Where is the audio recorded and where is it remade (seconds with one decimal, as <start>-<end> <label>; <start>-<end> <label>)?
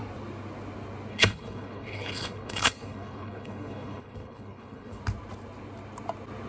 0.0-1.1 recorded; 1.1-5.0 remade; 5.0-6.5 recorded